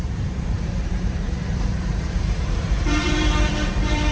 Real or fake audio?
fake